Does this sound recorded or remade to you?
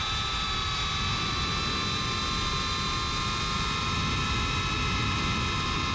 recorded